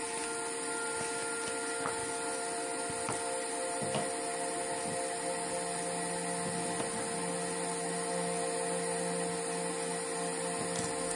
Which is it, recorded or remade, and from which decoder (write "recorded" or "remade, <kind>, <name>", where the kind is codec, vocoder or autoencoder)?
recorded